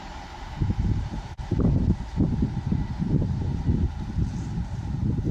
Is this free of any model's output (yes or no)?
no